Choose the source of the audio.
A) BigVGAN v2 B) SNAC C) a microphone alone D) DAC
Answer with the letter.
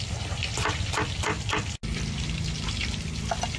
C